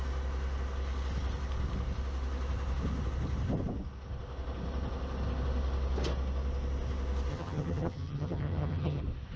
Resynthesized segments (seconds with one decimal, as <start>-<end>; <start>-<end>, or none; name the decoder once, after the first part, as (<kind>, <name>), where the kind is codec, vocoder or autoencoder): 7.3-9.0 (vocoder, HiFi-GAN)